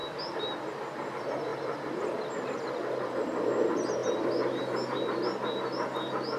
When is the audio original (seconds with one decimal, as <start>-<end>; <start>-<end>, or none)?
0.0-4.0; 4.6-6.4